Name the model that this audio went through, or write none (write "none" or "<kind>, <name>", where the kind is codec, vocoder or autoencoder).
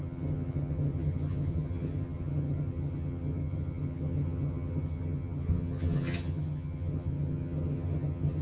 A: vocoder, HiFi-GAN